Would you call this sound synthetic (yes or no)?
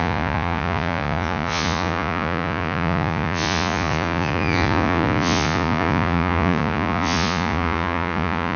yes